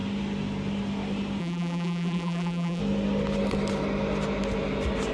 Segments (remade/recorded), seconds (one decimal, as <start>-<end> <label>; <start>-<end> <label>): 0.0-1.4 recorded; 1.4-2.8 remade; 2.8-5.1 recorded